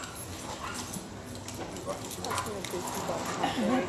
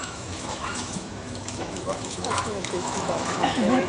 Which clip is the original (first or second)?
first